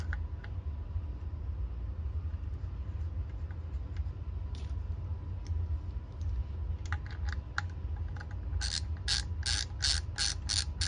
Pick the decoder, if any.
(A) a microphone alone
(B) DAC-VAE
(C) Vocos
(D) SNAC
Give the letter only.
A